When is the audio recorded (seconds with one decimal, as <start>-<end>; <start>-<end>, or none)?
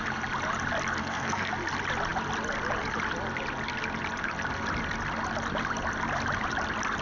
0.0-1.0; 1.5-7.0